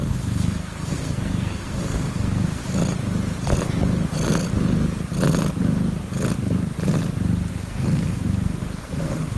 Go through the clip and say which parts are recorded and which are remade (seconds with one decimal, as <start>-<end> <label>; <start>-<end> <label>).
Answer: 0.0-2.6 remade; 2.6-7.5 recorded; 7.5-9.4 remade